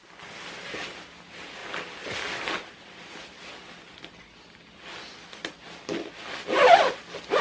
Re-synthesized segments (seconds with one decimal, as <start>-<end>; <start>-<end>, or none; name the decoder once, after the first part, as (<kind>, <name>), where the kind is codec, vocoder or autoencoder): none

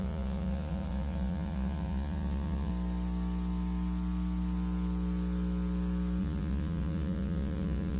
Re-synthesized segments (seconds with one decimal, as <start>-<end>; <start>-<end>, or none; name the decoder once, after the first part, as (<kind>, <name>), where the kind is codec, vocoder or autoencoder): 0.0-2.7 (vocoder, Vocos); 6.2-8.0

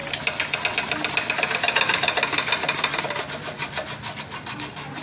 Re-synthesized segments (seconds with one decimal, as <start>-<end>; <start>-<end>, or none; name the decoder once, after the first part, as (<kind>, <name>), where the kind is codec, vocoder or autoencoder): none

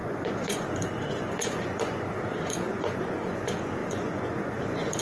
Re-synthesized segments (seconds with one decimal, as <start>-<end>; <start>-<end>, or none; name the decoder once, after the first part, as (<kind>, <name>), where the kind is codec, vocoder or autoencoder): 0.0-5.0 (vocoder, Vocos)

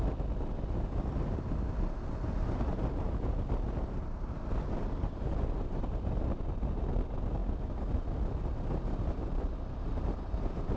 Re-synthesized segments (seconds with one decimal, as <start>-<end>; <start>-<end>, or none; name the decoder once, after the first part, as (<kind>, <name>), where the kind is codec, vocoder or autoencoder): none

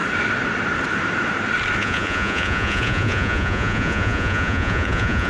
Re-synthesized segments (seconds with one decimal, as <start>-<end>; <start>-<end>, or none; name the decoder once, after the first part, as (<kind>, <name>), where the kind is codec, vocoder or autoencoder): 1.8-5.3 (vocoder, Vocos)

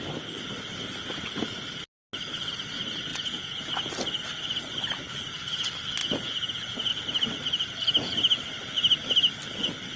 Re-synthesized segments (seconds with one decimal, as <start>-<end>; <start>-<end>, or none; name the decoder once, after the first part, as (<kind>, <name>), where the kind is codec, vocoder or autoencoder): 3.1-3.7 (vocoder, Vocos); 6.0-6.9

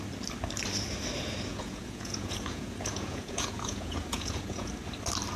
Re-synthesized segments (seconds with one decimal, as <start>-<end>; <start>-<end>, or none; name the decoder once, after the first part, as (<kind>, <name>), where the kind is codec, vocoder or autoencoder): 1.5-4.7 (vocoder, Vocos)